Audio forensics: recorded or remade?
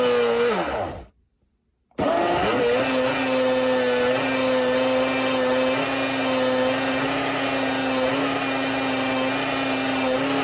recorded